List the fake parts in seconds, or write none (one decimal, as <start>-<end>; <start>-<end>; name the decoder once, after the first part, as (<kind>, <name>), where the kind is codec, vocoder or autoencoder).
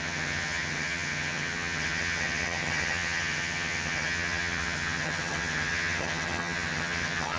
0.0-7.4 (vocoder, HiFi-GAN)